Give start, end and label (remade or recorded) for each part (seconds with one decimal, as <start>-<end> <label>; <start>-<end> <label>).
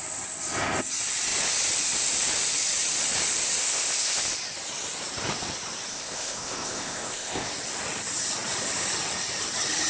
0.0-3.6 recorded; 3.6-4.2 remade; 4.2-5.9 recorded; 5.9-7.5 remade; 7.5-9.9 recorded